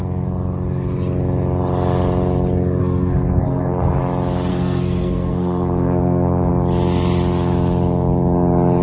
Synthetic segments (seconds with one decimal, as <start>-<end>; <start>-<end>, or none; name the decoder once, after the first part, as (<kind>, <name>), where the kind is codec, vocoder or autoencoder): 2.8-4.0 (codec, SNAC); 4.5-6.5